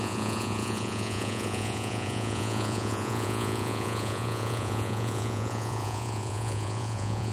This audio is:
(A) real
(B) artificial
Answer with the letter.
B